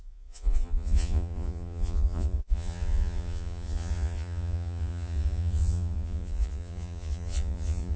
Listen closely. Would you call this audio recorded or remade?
remade